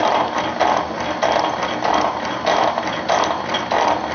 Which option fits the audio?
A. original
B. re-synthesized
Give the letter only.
A